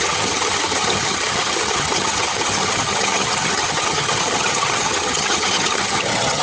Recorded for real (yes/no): no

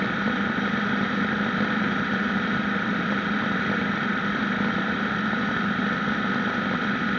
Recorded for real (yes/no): no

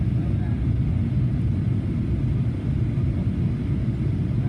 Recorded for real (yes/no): yes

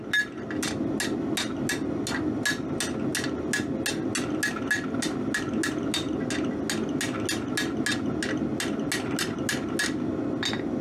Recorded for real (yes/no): yes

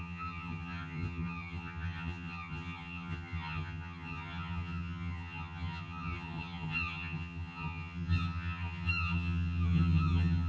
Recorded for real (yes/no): no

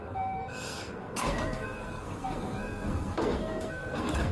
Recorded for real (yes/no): no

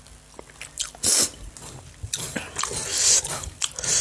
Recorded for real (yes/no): yes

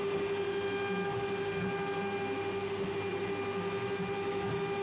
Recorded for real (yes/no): yes